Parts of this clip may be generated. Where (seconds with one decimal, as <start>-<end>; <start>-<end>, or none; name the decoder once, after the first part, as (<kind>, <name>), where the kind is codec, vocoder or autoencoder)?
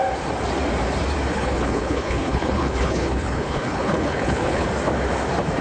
1.3-4.7 (codec, HILCodec)